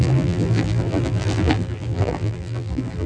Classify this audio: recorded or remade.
remade